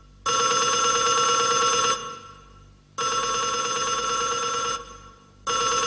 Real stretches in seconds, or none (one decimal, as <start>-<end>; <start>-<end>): 0.0-5.9